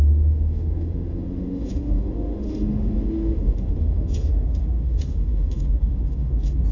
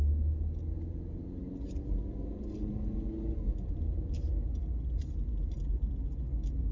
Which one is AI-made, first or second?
first